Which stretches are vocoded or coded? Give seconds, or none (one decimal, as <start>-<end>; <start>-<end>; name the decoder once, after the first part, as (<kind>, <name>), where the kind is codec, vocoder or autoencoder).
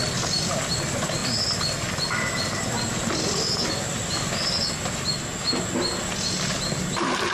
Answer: none